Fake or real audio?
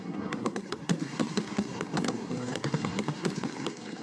fake